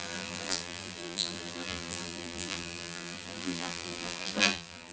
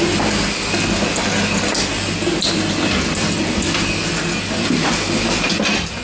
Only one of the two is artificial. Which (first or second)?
first